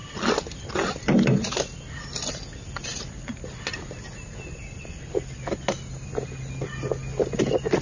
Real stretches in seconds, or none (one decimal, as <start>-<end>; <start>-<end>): 0.0-7.8

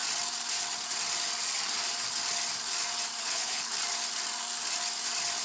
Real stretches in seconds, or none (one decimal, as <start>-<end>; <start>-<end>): 0.0-3.2; 3.7-5.4

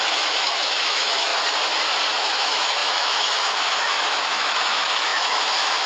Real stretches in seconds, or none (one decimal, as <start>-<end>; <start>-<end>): 1.3-2.2

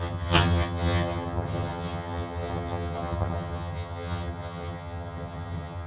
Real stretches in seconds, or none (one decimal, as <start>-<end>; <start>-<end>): none